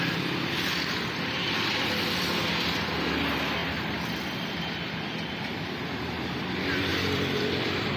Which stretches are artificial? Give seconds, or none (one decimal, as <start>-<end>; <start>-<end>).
none